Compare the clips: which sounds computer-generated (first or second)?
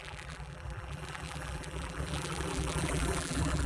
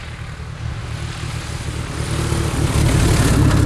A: first